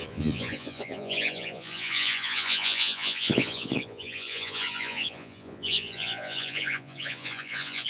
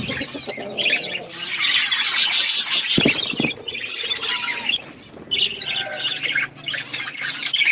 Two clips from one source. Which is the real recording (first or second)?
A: second